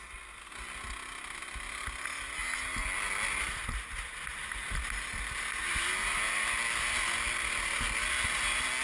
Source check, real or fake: real